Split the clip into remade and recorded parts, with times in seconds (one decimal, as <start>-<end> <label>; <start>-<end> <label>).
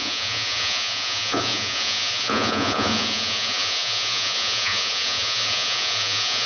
0.0-6.5 remade